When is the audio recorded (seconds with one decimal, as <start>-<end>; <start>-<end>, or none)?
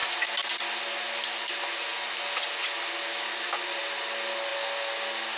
0.0-5.4